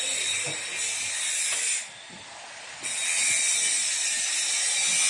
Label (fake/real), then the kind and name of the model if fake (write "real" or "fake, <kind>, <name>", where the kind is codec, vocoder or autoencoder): real